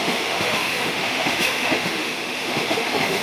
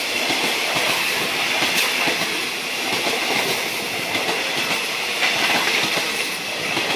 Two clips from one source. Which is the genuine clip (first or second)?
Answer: second